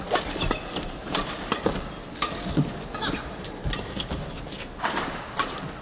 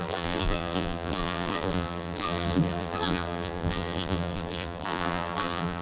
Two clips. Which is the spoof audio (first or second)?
second